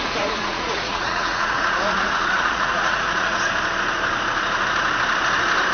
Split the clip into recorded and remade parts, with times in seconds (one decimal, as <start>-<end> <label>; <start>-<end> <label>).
0.0-3.4 remade; 3.4-5.7 recorded

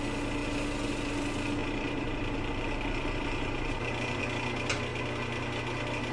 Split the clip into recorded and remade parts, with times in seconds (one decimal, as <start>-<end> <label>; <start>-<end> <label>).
0.0-1.6 recorded; 1.6-4.2 remade; 4.2-6.1 recorded

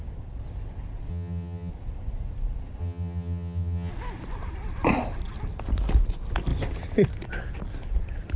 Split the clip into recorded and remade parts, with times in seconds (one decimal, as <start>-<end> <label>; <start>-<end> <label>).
0.0-1.1 recorded; 1.1-1.7 remade; 1.7-2.8 recorded; 2.8-3.9 remade; 3.9-8.4 recorded